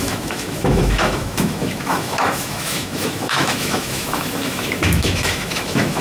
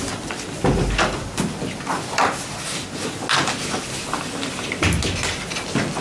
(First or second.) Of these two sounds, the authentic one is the second